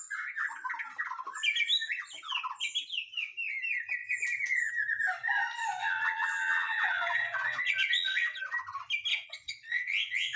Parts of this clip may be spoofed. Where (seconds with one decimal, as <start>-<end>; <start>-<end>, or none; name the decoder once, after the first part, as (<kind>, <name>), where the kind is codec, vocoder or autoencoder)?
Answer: 5.8-8.4 (vocoder, WaveNeXt); 9.1-10.4